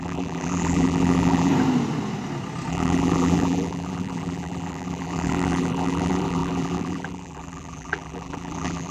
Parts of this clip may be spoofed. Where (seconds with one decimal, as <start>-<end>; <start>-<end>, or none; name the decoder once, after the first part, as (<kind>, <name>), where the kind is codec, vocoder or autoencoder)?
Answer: 0.0-1.5 (vocoder, BigVGAN v2); 2.7-8.9

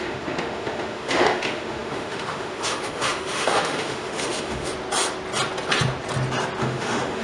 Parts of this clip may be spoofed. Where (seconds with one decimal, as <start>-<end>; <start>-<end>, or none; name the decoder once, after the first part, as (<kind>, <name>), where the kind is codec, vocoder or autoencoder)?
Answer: 0.0-4.7 (autoencoder, DAC-VAE); 6.6-7.2

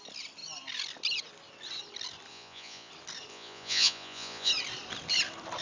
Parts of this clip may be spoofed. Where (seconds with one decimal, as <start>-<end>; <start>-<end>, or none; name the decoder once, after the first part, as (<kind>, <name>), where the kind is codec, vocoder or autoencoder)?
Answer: 2.3-2.9 (vocoder, Vocos); 3.3-4.5

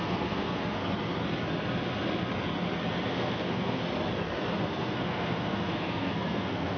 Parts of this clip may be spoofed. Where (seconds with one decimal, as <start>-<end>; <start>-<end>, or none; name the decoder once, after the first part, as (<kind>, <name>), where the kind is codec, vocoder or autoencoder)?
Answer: 0.0-0.8 (codec, SNAC); 3.1-3.8; 4.5-6.8

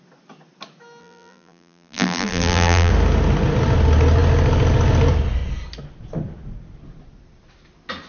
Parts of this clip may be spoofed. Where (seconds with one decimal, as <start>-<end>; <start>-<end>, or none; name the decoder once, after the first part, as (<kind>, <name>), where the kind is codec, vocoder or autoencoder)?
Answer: 1.0-2.9 (vocoder, BigVGAN v2)

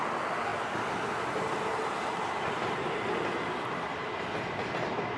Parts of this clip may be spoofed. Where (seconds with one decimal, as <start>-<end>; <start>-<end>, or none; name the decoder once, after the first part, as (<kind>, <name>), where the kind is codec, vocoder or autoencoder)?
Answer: none